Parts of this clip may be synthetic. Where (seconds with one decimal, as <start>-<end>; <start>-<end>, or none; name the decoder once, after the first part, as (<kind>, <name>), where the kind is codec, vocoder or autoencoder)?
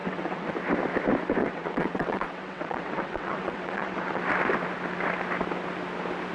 0.0-0.5 (vocoder, WaveNeXt); 1.4-4.2